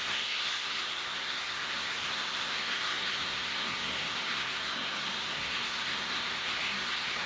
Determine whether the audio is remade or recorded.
remade